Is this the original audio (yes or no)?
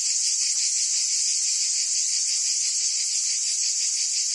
yes